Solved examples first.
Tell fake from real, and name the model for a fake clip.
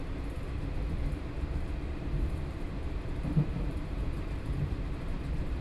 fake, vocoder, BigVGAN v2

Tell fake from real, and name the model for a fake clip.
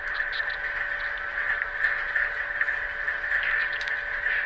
real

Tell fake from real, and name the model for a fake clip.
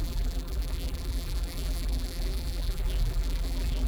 fake, vocoder, BigVGAN v2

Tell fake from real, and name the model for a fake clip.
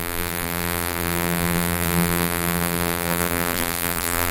fake, vocoder, BigVGAN v2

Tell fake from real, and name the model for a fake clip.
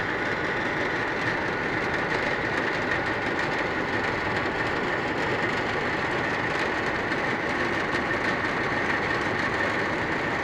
real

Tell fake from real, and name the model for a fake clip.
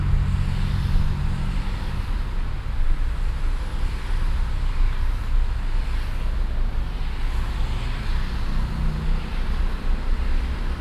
real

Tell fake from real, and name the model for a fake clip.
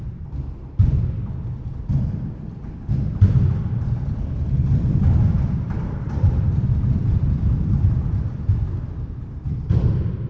fake, vocoder, BigVGAN v2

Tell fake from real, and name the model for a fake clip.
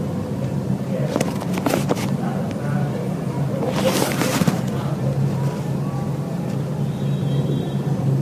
real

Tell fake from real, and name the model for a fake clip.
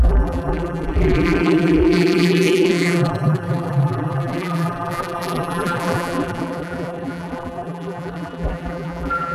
fake, vocoder, BigVGAN v2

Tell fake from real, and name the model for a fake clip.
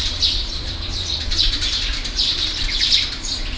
fake, vocoder, BigVGAN v2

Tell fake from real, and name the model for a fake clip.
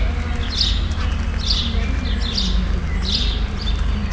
real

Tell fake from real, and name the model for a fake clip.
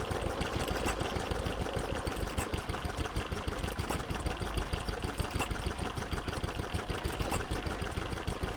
real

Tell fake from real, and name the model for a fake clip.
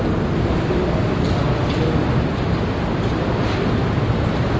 real